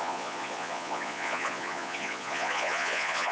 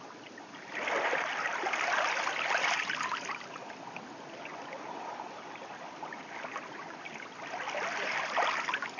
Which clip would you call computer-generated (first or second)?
first